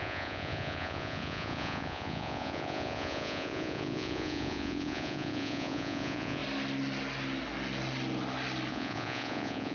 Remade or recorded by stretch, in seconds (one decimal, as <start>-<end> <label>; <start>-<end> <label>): 0.0-6.4 remade; 6.4-8.7 recorded; 8.7-9.7 remade